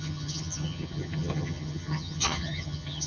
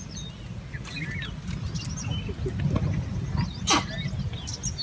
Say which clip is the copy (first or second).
first